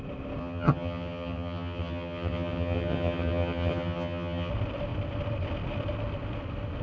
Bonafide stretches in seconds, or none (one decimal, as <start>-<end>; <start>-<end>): 0.0-0.4; 4.5-6.8